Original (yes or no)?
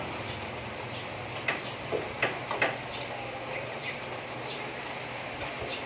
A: yes